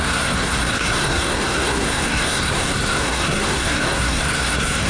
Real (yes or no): no